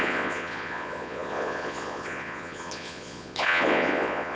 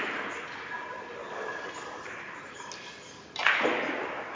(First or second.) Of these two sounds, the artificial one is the first